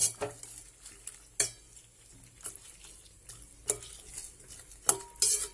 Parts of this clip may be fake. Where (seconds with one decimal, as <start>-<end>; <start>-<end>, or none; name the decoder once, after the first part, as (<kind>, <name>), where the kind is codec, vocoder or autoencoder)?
none